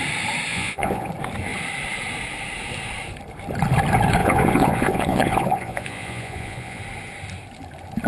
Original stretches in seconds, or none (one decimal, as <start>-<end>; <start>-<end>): 0.0-0.5; 1.1-4.2; 6.8-8.1